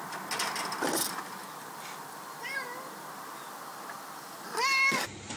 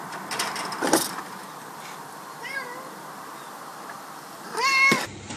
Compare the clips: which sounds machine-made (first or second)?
second